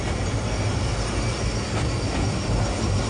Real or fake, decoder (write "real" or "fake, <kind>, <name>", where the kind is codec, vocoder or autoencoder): real